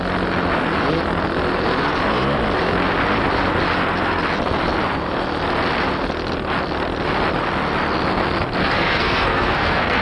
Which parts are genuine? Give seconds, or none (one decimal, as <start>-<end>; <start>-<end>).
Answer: 0.0-8.6